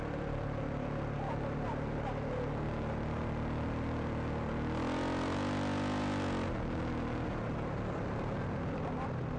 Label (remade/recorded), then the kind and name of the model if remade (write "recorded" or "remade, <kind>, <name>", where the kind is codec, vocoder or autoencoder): recorded